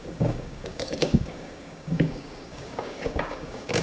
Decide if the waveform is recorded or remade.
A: remade